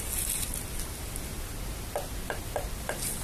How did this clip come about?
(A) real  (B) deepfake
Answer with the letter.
A